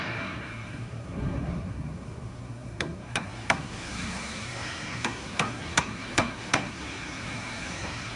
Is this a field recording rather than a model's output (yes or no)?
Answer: no